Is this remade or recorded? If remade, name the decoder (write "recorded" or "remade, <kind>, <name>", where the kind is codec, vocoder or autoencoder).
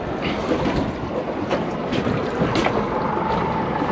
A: recorded